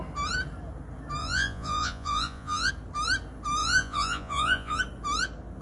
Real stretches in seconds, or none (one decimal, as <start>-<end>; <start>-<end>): 0.0-1.2; 2.7-3.6; 4.8-5.6